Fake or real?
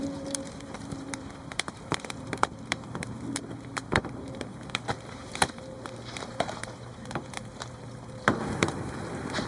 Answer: fake